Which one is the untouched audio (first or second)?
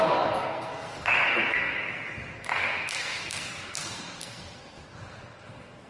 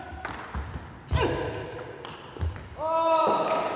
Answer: second